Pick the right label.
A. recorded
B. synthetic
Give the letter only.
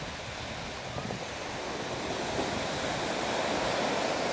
A